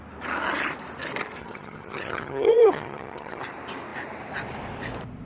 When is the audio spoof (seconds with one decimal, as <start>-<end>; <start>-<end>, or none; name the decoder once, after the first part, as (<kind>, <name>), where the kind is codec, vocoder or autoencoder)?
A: 1.4-3.4 (vocoder, HiFi-GAN)